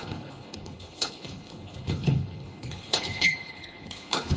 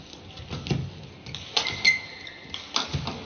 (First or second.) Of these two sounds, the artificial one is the first